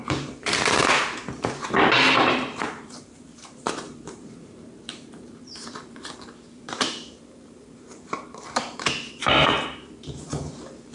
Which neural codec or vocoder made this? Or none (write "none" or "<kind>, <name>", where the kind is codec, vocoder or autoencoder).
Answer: vocoder, BigVGAN v2